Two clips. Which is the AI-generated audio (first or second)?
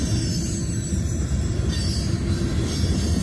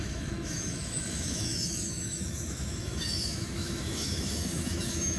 second